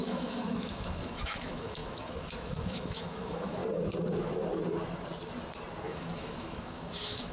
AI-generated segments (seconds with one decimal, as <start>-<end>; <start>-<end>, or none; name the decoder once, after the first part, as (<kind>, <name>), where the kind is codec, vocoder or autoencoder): 0.0-3.6 (autoencoder, DAC-VAE); 5.8-7.3